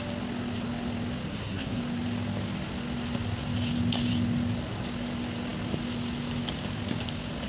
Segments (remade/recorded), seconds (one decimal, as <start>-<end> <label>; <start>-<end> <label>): 0.0-1.3 recorded; 1.3-1.8 remade; 1.8-7.5 recorded

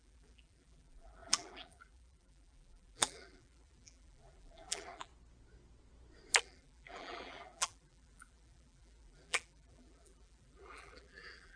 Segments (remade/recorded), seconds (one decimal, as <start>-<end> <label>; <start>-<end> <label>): 0.0-5.1 remade; 5.1-6.4 recorded; 6.4-11.6 remade

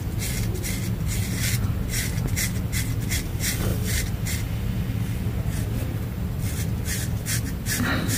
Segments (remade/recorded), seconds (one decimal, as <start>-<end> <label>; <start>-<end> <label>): 0.0-3.7 recorded; 3.7-8.2 remade

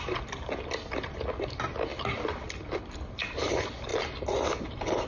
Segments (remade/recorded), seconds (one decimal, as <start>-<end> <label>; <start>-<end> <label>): 0.0-5.1 recorded